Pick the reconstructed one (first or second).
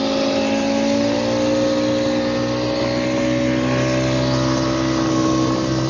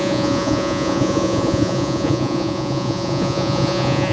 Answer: second